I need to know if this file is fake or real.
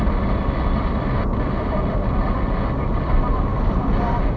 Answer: real